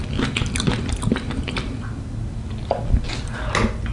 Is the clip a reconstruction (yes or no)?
no